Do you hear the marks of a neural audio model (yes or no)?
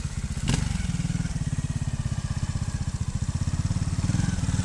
no